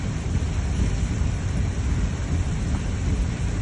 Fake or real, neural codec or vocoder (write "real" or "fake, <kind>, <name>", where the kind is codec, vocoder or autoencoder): real